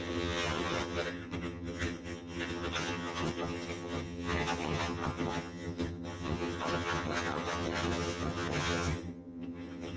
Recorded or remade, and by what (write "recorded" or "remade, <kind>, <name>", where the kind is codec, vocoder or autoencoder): remade, vocoder, HiFi-GAN